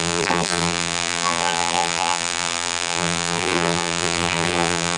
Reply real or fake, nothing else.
fake